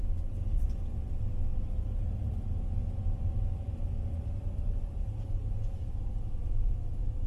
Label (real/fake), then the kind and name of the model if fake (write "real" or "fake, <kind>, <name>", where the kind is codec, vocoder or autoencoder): real